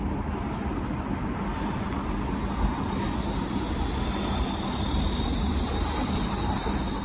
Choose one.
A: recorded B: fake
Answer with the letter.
A